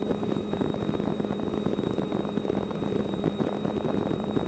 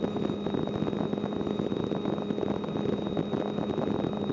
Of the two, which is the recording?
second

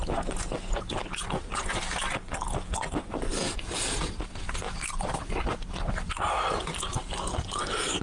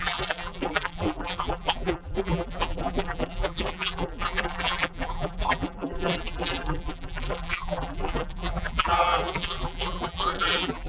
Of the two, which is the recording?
first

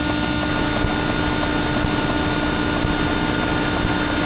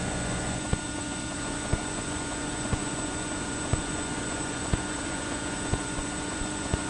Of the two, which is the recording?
first